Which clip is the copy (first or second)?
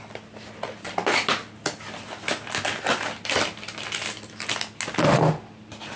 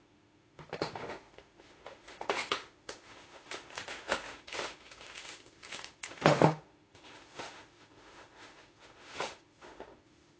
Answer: second